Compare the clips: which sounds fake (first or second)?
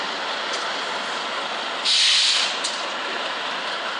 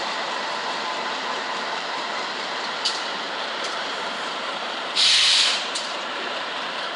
second